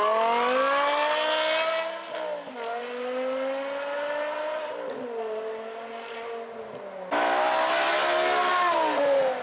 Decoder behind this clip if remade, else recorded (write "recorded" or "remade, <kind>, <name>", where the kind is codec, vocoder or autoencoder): recorded